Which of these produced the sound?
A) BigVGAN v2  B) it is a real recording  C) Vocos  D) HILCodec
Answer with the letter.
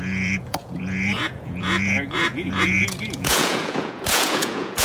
C